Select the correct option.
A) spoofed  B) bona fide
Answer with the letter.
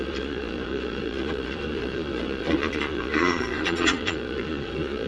A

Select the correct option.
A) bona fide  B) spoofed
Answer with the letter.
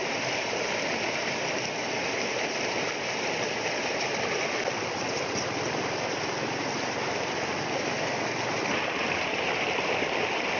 A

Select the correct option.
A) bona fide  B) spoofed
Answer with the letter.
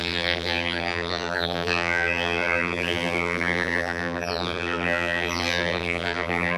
B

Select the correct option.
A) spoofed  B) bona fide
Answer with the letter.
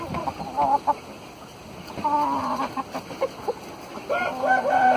B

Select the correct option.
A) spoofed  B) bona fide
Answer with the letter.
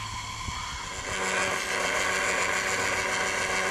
B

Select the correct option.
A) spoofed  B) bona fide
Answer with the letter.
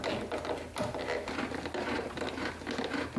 B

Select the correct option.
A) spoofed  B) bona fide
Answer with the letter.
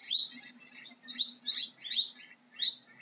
B